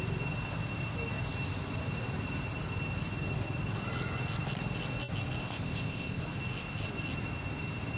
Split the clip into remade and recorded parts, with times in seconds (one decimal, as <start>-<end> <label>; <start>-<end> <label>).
0.0-5.4 recorded; 5.4-6.2 remade; 6.2-8.0 recorded